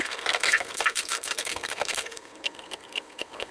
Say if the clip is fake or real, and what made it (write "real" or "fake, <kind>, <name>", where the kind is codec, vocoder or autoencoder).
fake, codec, SNAC